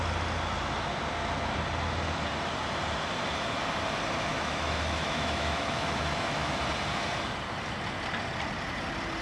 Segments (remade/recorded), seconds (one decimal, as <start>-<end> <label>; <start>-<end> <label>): 0.0-4.3 recorded; 4.3-6.6 remade; 6.6-9.2 recorded